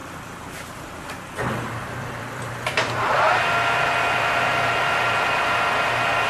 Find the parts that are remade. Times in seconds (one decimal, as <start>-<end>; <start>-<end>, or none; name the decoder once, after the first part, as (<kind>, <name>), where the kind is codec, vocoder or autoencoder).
1.8-6.3 (vocoder, BigVGAN v2)